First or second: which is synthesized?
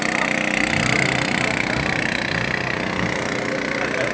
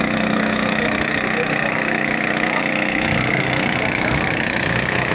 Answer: second